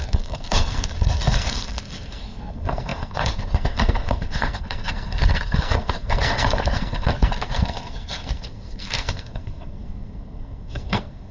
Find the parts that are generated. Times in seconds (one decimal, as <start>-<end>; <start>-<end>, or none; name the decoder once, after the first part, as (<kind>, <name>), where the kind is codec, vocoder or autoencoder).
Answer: 0.0-11.3 (codec, SNAC)